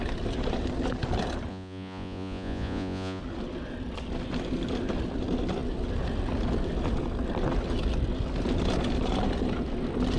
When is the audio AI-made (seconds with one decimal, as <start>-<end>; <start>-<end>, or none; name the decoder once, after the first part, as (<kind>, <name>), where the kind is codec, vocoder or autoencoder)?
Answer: 1.5-3.2 (vocoder, Vocos)